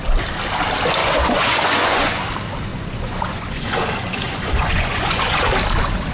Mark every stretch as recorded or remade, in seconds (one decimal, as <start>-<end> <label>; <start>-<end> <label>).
0.0-1.0 recorded; 1.0-2.2 remade; 2.2-2.7 recorded; 2.7-5.5 remade; 5.5-6.1 recorded